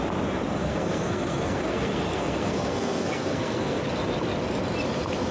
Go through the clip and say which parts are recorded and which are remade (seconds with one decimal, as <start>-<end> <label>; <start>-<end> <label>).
0.0-0.6 recorded; 0.6-3.8 remade; 3.8-5.3 recorded